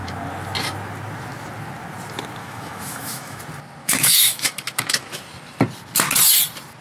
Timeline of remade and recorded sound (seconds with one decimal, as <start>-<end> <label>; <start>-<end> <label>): 0.0-2.4 recorded; 2.4-3.4 remade; 3.4-3.8 recorded; 3.8-5.2 remade; 5.2-6.8 recorded